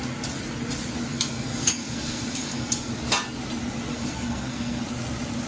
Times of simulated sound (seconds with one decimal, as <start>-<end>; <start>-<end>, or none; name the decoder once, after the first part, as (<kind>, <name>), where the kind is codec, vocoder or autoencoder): 1.1-2.9 (codec, SNAC); 3.9-4.8